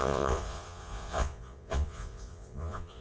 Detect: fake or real fake